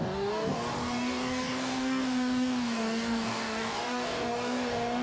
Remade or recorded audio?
remade